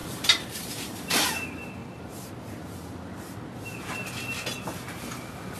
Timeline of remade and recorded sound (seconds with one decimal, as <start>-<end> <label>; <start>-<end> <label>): 0.0-1.3 remade; 1.3-5.6 recorded